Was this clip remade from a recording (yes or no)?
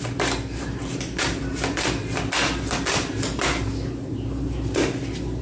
no